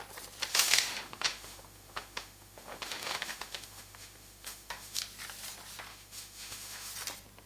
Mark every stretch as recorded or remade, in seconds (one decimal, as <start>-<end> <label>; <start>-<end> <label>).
0.0-0.5 recorded; 0.5-5.0 remade; 5.0-5.9 recorded; 5.9-6.9 remade; 6.9-7.5 recorded